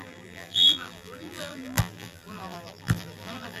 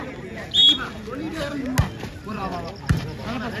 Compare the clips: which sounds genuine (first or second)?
second